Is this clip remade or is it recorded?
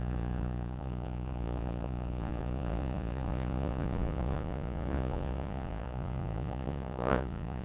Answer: remade